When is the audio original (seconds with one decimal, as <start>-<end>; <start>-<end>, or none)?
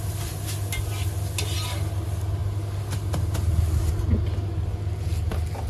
0.0-5.7